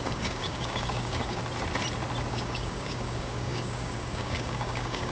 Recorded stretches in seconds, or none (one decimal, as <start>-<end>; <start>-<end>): 1.4-2.3